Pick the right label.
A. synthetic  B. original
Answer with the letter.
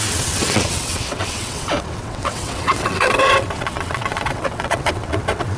A